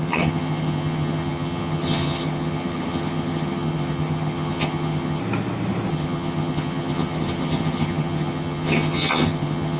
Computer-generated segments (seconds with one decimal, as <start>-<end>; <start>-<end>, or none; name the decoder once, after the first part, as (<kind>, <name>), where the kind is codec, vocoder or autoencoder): 0.0-5.2 (vocoder, HiFi-GAN); 5.9-9.8